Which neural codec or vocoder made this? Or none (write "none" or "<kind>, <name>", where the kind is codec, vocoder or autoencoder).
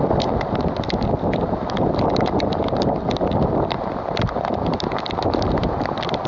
none